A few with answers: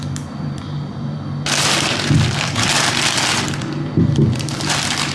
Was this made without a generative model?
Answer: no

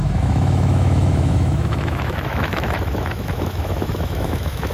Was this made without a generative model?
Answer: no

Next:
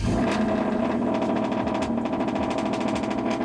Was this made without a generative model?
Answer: yes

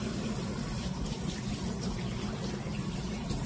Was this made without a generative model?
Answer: yes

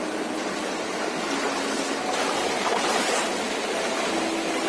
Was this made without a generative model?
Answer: yes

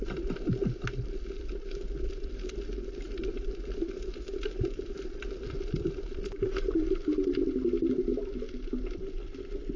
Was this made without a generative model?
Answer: yes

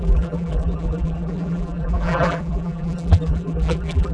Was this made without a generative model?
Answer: no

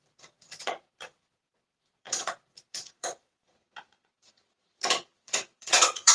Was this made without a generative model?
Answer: no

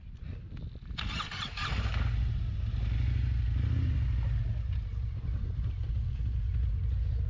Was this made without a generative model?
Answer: yes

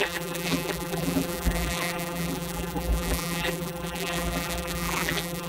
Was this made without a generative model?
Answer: no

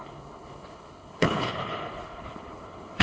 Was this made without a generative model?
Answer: no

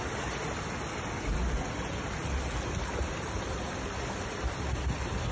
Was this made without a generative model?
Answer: yes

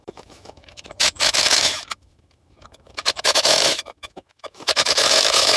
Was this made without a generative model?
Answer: no